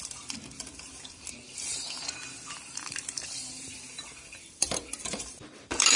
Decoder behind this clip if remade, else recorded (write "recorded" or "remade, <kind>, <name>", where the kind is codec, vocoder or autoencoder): remade, vocoder, BigVGAN v2